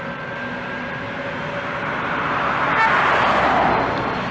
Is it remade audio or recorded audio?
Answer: recorded